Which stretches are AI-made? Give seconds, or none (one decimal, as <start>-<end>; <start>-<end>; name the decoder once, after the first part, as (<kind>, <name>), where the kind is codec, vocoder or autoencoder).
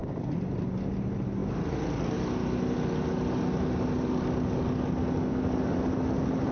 none